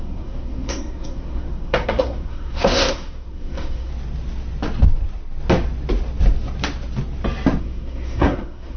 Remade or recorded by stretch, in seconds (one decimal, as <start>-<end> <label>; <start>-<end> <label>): 0.0-3.9 remade; 3.9-7.6 recorded; 7.6-8.8 remade